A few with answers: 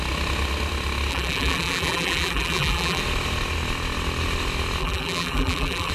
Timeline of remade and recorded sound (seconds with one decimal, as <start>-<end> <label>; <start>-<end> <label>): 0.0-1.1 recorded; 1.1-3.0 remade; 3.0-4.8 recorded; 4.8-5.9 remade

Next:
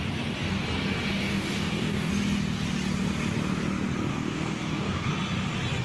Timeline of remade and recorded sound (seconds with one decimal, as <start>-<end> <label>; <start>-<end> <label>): 0.0-1.3 recorded; 1.3-2.1 remade; 2.1-4.1 recorded; 4.1-5.1 remade; 5.1-5.8 recorded

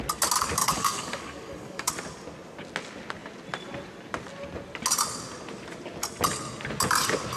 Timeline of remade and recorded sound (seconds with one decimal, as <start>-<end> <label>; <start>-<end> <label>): 0.0-0.6 recorded; 0.6-1.9 remade; 1.9-7.4 recorded

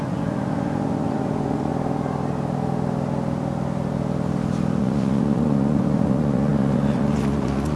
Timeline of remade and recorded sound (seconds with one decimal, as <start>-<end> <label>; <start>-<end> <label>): 0.0-1.7 remade; 1.7-4.8 recorded; 4.8-7.8 remade

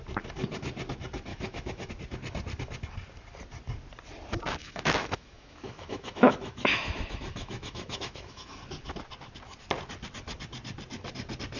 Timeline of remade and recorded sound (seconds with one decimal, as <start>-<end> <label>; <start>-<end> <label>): 0.0-1.3 recorded; 1.3-1.9 remade; 1.9-4.6 recorded; 4.6-8.6 remade; 8.6-11.6 recorded

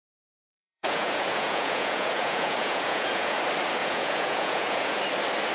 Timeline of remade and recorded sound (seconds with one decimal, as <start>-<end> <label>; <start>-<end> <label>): 0.0-0.4 recorded; 0.4-3.4 remade; 3.4-3.8 recorded; 3.8-5.0 remade; 5.0-5.5 recorded